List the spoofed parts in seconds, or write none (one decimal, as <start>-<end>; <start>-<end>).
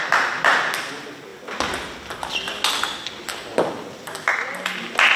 none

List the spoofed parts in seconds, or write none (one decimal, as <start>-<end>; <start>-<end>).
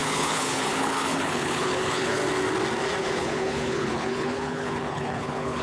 0.0-2.2; 3.0-5.6